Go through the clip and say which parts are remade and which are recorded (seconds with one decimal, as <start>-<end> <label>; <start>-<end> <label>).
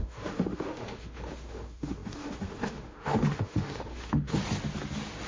0.0-4.4 remade; 4.4-5.3 recorded